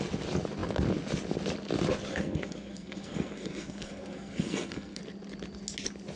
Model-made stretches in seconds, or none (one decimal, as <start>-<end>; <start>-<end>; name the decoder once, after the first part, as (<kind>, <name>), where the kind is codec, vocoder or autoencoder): 2.1-5.0 (codec, SNAC)